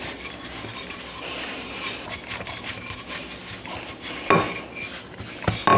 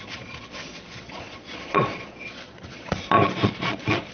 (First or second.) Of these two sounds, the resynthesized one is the second